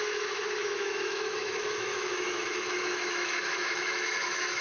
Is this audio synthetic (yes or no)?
yes